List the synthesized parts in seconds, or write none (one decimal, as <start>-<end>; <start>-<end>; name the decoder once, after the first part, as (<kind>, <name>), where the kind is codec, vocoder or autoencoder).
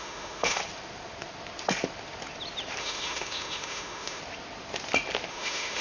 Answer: 0.0-0.6 (autoencoder, DAC-VAE); 2.8-4.2; 5.3-5.8